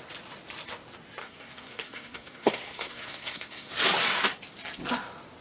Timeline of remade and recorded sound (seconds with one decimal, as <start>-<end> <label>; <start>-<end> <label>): 0.0-1.2 recorded; 1.2-3.7 remade; 3.7-5.4 recorded